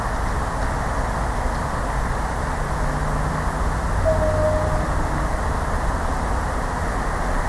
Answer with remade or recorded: recorded